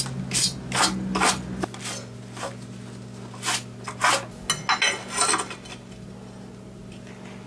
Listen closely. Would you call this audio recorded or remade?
recorded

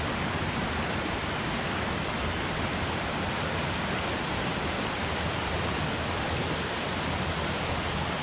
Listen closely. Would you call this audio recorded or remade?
recorded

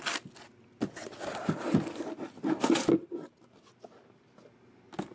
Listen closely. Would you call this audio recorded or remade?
recorded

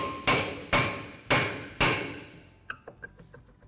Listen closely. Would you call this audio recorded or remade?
recorded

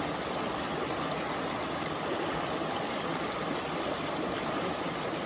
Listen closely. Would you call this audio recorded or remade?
recorded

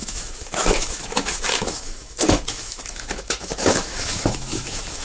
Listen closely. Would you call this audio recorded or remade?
remade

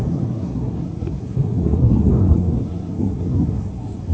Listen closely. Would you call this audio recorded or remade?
remade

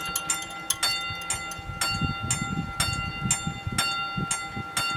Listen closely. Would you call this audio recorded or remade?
recorded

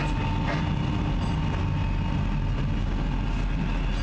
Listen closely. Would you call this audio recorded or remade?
recorded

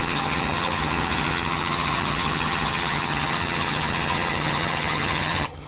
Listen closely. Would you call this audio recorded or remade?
remade